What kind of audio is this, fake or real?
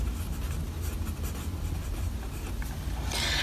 real